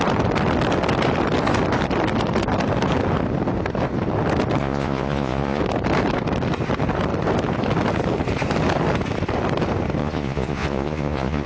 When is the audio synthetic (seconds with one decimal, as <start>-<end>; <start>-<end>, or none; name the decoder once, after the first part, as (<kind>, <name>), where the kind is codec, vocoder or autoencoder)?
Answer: 4.6-5.6 (vocoder, Vocos); 10.0-11.5